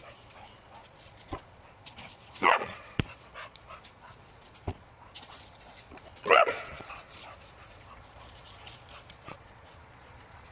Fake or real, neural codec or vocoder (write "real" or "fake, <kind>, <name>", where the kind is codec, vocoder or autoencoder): fake, vocoder, Vocos